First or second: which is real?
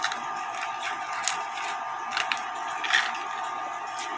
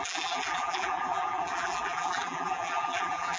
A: first